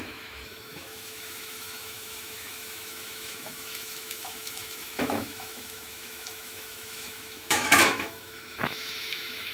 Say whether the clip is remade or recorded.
remade